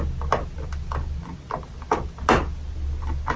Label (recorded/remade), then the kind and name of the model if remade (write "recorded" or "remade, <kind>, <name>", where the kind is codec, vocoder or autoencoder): recorded